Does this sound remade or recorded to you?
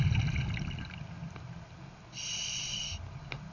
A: recorded